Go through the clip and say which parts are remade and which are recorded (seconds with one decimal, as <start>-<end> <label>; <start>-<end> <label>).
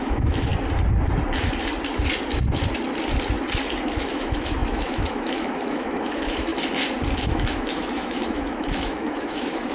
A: 0.0-0.5 remade; 0.5-4.0 recorded; 4.0-6.5 remade; 6.5-7.2 recorded; 7.2-9.7 remade